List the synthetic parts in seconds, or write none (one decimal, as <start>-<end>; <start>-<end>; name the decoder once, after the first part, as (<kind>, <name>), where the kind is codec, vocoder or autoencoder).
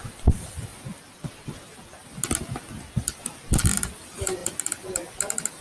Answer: none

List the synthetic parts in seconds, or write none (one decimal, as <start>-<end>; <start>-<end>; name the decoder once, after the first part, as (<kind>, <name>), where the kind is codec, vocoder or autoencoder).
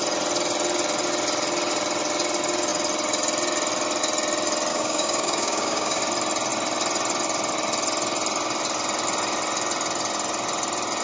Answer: 4.7-6.0 (codec, DAC)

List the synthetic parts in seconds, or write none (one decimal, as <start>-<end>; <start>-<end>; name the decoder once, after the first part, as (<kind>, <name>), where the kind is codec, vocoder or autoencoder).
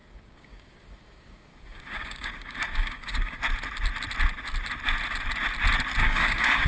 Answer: 0.0-3.4 (codec, DAC); 6.0-6.7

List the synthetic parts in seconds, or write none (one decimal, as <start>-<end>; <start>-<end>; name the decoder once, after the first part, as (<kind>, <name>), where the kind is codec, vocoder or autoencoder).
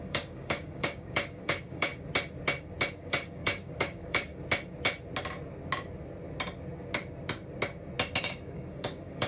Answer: 0.0-1.9 (codec, DAC); 2.9-4.3; 8.2-9.3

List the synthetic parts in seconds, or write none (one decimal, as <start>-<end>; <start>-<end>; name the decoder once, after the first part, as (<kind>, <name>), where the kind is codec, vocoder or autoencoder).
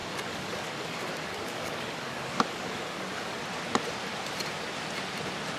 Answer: 0.0-3.4 (codec, DAC)